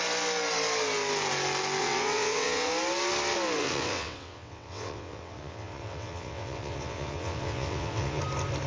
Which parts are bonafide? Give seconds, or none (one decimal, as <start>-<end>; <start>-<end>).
0.0-1.8; 2.7-3.6; 8.2-8.7